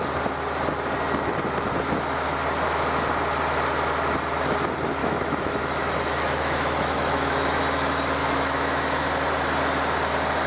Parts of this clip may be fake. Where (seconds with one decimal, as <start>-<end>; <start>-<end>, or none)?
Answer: 5.0-7.6; 8.2-9.0